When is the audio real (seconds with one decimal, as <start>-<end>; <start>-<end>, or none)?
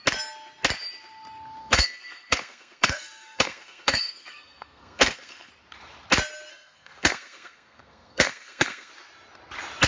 0.0-1.6; 5.5-6.5; 8.9-9.9